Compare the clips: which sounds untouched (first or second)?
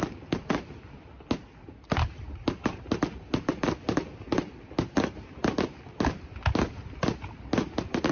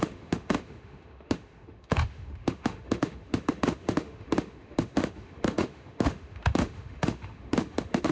first